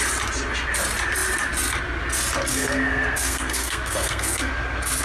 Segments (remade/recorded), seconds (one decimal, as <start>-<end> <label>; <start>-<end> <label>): 0.0-2.5 recorded; 2.5-4.5 remade; 4.5-5.0 recorded